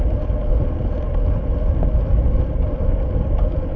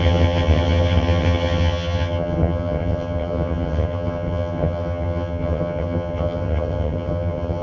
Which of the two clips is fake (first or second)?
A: second